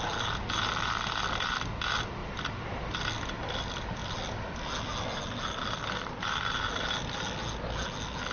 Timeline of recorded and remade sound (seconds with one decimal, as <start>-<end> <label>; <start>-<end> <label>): 0.0-8.3 recorded